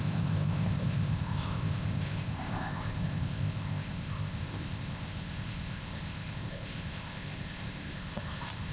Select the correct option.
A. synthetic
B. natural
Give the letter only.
A